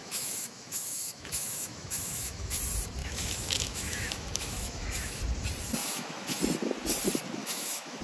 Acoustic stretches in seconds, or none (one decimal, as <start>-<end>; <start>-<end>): 2.6-3.0; 5.2-5.8; 6.4-7.4